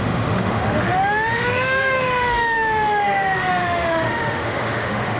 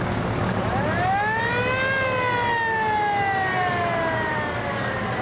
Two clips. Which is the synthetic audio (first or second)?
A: first